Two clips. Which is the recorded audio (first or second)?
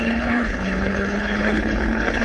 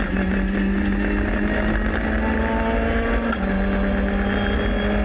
second